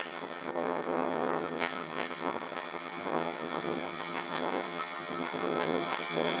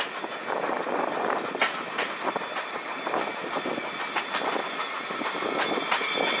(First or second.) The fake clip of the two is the first